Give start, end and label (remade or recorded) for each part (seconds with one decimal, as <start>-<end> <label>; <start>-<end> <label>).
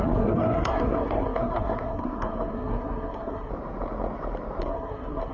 0.0-3.5 remade; 3.5-4.6 recorded; 4.6-5.3 remade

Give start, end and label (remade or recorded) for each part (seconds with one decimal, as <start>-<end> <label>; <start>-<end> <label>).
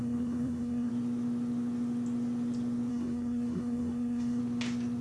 0.0-0.9 remade; 0.9-2.9 recorded; 2.9-4.4 remade; 4.4-5.0 recorded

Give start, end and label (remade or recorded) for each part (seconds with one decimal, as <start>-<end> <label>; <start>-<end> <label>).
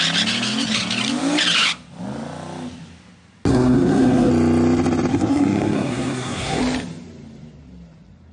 0.0-3.5 recorded; 3.5-4.3 remade; 4.3-5.1 recorded; 5.1-6.6 remade; 6.6-8.3 recorded